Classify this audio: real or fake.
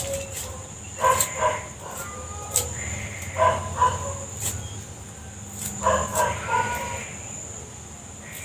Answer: real